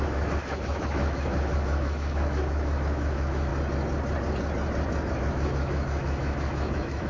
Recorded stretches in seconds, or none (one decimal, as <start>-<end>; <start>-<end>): 3.5-5.1